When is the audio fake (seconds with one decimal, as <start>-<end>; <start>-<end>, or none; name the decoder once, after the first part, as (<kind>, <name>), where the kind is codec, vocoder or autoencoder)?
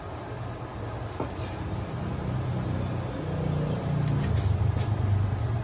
none